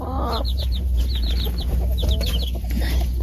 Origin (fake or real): fake